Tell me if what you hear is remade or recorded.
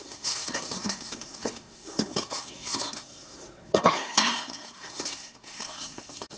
remade